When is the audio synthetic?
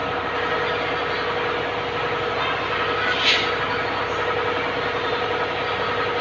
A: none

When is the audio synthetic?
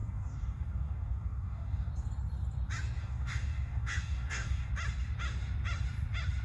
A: 0.0-1.9 (codec, DAC); 3.0-4.7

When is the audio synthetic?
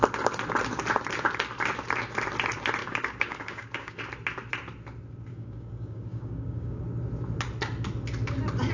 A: 2.8-4.0 (codec, DAC); 5.3-6.8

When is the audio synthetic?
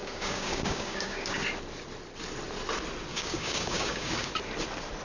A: 0.0-1.4 (codec, DAC); 3.1-4.3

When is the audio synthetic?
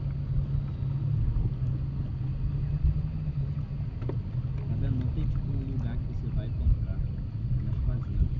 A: none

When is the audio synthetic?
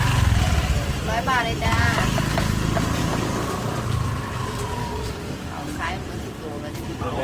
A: 1.7-2.3 (codec, DAC); 3.0-3.5; 4.8-5.9